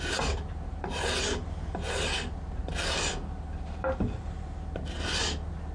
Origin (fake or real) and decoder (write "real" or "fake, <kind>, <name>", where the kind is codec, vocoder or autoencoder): real